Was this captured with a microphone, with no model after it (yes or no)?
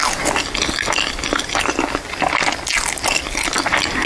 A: yes